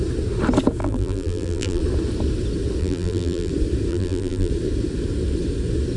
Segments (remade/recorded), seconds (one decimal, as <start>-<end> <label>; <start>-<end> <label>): 0.0-0.8 recorded; 0.8-1.8 remade; 1.8-2.8 recorded; 2.8-3.5 remade; 3.5-3.9 recorded; 3.9-4.5 remade; 4.5-6.0 recorded